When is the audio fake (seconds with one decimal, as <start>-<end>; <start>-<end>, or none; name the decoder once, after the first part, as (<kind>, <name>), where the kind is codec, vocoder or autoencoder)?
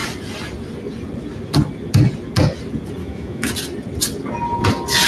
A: 3.0-3.5 (autoencoder, DAC-VAE)